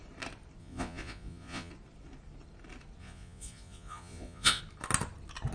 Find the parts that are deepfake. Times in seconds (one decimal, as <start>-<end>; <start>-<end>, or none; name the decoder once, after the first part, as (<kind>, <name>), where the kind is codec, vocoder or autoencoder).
0.6-1.7 (vocoder, Vocos); 3.0-4.6